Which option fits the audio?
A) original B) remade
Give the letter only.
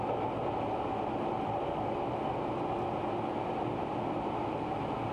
A